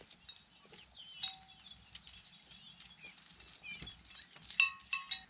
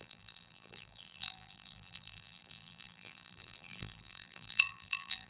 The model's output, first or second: second